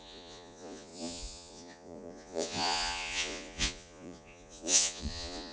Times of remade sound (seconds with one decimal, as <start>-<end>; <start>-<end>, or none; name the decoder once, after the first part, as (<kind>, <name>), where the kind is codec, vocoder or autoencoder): 0.0-5.5 (vocoder, Vocos)